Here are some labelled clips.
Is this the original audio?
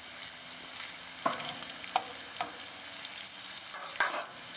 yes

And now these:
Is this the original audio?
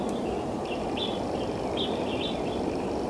yes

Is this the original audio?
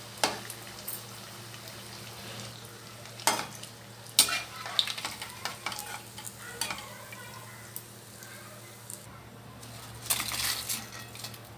yes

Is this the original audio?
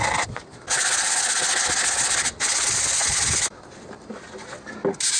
yes